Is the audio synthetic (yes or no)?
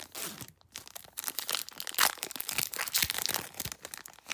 no